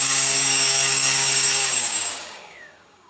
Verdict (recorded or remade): remade